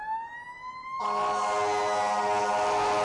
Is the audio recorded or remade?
recorded